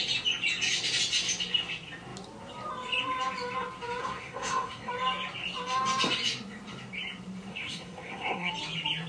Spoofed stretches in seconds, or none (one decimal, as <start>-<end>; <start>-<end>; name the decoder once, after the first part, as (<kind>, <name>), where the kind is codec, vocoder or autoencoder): 4.0-4.9 (codec, SNAC); 7.5-8.5